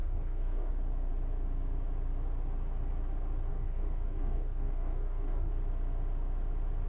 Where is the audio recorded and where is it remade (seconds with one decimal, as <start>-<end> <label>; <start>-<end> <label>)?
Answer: 0.0-0.7 remade; 0.7-3.5 recorded; 3.5-5.5 remade; 5.5-6.9 recorded